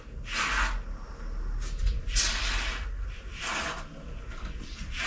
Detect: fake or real real